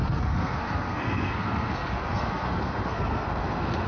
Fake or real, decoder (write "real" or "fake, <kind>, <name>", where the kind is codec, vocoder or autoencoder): fake, codec, SNAC